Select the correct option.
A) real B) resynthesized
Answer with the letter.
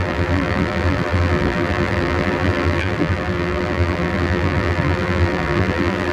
B